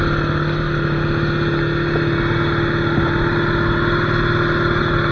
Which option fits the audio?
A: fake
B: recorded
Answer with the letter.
B